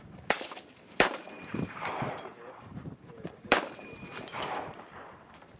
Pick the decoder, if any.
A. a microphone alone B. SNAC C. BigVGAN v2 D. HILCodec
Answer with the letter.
C